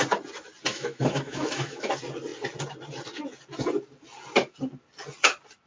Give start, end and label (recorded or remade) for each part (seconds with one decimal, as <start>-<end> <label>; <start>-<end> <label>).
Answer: 0.0-0.7 recorded; 0.7-1.9 remade; 1.9-5.7 recorded